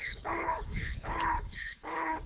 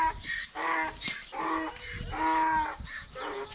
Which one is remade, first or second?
first